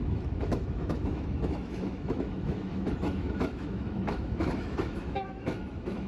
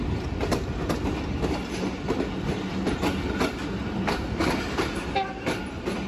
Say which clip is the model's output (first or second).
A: first